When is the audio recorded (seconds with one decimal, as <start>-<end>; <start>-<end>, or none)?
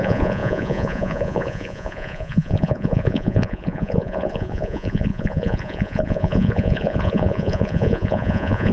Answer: none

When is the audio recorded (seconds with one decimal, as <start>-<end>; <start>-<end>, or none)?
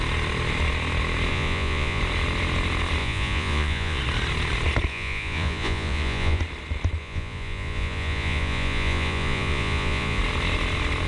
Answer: 0.0-1.3; 2.0-3.0; 4.0-4.9; 6.4-7.0; 10.2-11.1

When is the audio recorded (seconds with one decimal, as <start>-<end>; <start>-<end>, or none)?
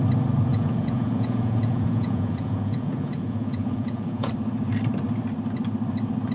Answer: 0.0-0.5; 4.3-6.3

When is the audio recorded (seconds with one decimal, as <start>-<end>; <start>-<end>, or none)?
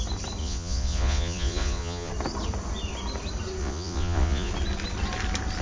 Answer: 0.0-0.4; 2.1-3.6; 4.5-5.6